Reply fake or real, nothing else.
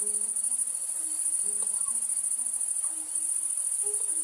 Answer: real